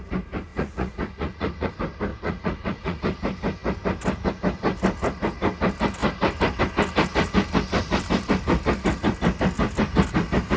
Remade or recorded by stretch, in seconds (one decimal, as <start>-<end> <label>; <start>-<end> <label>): 0.0-0.5 recorded; 0.5-1.7 remade; 1.7-2.1 recorded; 2.1-3.0 remade; 3.0-10.6 recorded

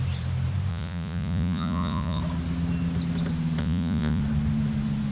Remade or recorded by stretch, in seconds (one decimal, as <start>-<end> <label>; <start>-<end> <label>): 0.0-0.7 recorded; 0.7-2.2 remade; 2.2-3.6 recorded; 3.6-4.2 remade; 4.2-5.1 recorded

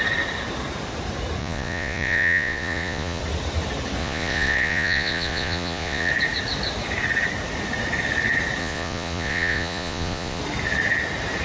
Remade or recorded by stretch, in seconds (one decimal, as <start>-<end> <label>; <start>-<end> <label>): 0.0-1.4 recorded; 1.4-3.2 remade; 3.2-4.0 recorded; 4.0-6.1 remade; 6.1-8.6 recorded; 8.6-10.4 remade; 10.4-11.4 recorded

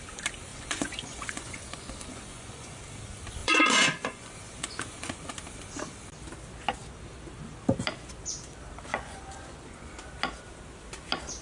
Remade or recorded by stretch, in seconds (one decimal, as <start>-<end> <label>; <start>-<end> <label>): 0.0-0.5 recorded; 0.5-2.8 remade; 2.8-3.4 recorded; 3.4-5.3 remade; 5.3-8.9 recorded; 8.9-9.9 remade; 9.9-11.4 recorded

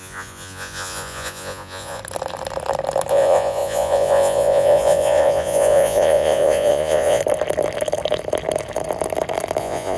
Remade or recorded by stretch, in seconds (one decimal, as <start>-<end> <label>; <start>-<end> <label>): 0.0-2.0 remade; 2.0-3.1 recorded; 3.1-7.2 remade; 7.2-9.6 recorded; 9.6-10.0 remade

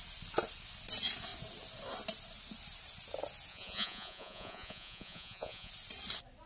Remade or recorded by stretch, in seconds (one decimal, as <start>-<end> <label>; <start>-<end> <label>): 0.0-3.5 recorded; 3.5-5.7 remade; 5.7-6.5 recorded

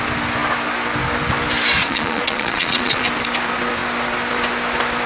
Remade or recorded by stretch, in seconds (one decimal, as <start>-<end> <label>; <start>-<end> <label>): 0.0-1.8 recorded; 1.8-3.0 remade; 3.0-5.1 recorded